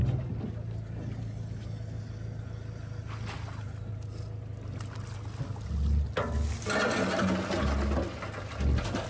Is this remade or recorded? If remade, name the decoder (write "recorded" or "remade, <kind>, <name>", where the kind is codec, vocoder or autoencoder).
recorded